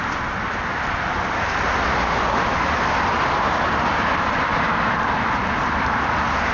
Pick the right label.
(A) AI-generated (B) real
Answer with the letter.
B